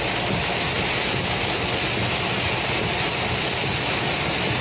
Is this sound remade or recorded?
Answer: recorded